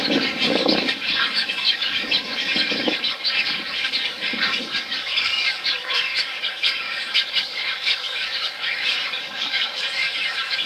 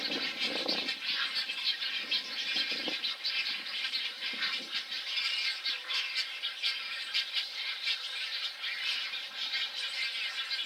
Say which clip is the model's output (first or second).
first